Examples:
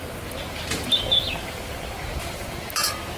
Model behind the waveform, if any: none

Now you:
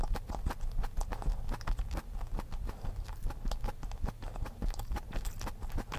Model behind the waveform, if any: none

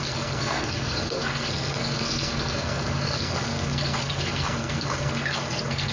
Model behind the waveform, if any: codec, SNAC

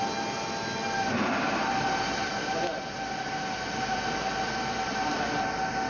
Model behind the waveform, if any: none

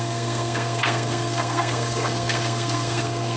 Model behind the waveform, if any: codec, SNAC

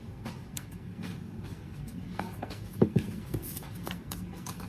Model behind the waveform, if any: codec, SNAC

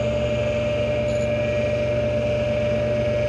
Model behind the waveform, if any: none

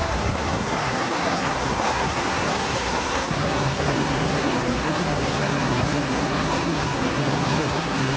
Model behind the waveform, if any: codec, SNAC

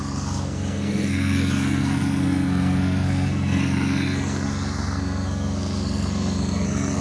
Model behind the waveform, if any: codec, SNAC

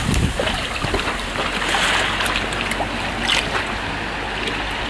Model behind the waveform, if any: none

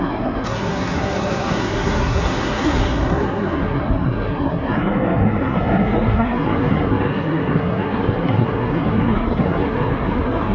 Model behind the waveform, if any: codec, SNAC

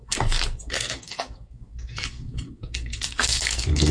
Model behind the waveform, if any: codec, SNAC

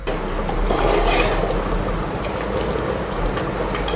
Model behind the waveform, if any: none